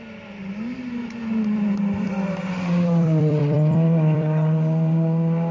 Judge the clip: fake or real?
fake